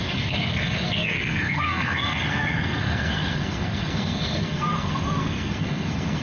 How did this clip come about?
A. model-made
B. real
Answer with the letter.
A